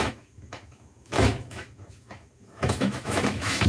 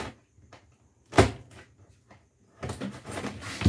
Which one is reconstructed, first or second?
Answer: first